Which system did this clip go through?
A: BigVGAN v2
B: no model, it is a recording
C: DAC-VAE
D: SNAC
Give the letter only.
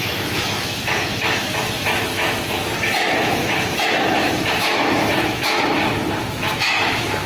C